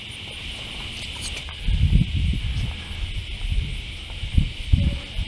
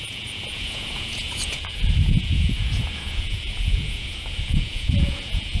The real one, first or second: first